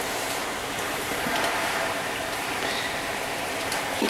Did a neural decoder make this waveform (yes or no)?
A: yes